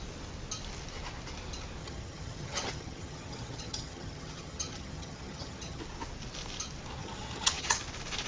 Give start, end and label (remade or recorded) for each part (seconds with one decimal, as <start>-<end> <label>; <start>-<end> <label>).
0.0-1.8 recorded; 1.8-5.8 remade; 5.8-7.0 recorded; 7.0-7.8 remade; 7.8-8.3 recorded